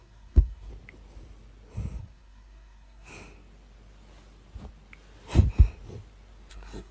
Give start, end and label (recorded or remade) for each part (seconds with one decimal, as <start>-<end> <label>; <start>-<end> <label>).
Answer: 0.0-0.7 remade; 0.7-2.0 recorded; 2.0-3.1 remade; 3.1-6.5 recorded; 6.5-6.9 remade